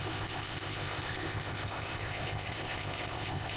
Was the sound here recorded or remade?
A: remade